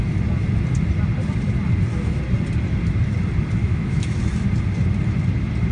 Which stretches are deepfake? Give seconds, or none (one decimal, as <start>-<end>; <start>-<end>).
3.6-4.2